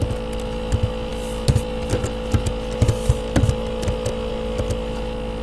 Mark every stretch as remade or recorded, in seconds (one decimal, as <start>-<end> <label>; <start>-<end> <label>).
0.0-5.4 recorded